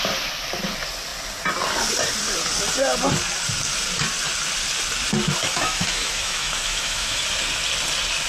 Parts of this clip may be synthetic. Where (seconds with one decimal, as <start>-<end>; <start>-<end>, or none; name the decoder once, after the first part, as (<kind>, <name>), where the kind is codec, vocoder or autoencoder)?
5.4-7.2 (autoencoder, DAC-VAE)